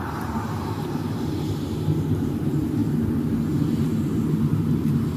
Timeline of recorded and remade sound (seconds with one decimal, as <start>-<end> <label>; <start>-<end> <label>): 0.0-2.8 remade; 2.8-3.6 recorded; 3.6-5.2 remade